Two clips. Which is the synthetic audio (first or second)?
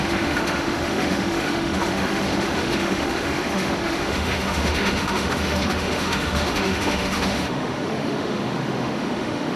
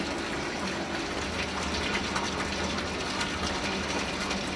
first